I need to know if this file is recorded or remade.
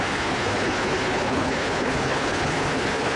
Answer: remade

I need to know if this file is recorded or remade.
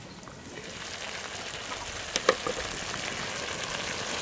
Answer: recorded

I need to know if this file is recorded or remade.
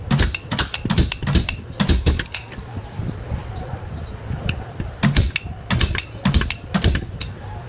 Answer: recorded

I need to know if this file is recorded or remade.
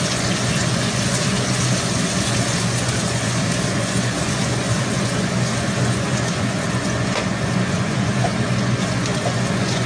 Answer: remade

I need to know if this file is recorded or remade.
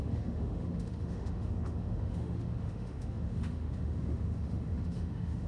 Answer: remade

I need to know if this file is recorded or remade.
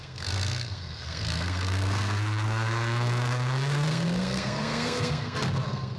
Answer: remade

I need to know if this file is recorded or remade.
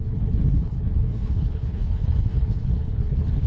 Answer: remade